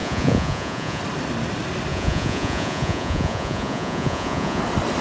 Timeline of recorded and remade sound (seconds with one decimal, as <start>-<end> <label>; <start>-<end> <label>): 0.0-1.0 remade; 1.0-1.9 recorded; 1.9-4.6 remade; 4.6-5.0 recorded